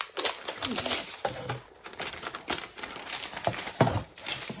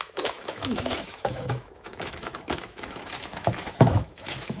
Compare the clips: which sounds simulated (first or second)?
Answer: second